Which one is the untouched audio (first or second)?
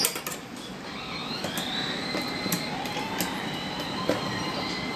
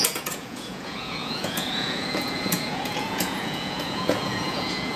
first